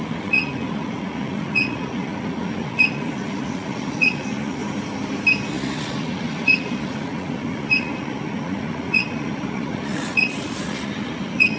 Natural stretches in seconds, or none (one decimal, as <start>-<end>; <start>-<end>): 4.6-5.5